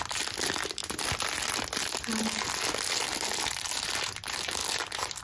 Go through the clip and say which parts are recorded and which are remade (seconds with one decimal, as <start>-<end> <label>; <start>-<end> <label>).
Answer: 0.0-5.2 recorded